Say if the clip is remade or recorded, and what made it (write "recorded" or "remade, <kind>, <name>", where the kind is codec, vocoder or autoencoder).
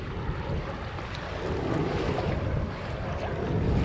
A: recorded